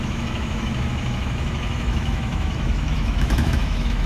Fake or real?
fake